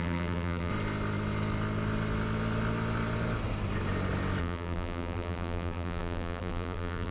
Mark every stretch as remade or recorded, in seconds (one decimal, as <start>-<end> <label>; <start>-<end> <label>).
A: 0.0-0.7 remade; 0.7-4.4 recorded; 4.4-7.1 remade